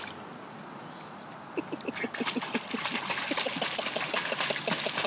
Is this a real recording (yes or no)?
yes